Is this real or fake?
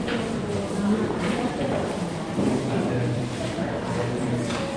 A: fake